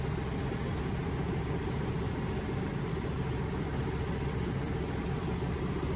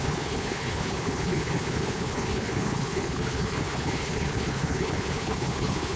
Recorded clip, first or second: first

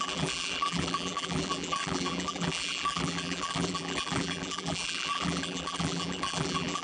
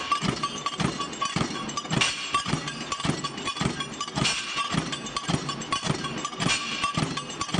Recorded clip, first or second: second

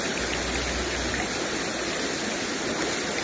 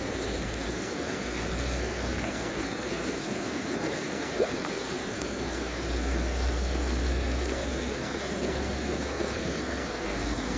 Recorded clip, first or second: first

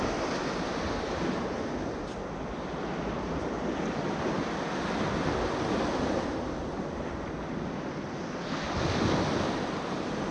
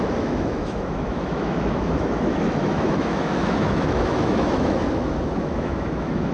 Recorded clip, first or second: first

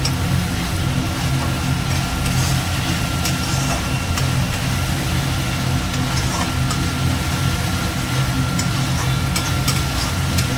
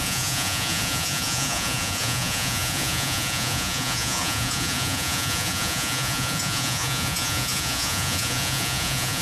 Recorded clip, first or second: first